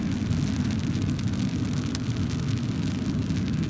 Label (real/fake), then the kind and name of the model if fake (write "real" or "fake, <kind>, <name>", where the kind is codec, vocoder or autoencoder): real